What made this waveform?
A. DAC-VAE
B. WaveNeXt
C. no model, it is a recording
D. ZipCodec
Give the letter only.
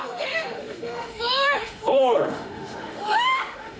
A